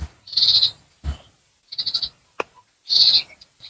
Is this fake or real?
real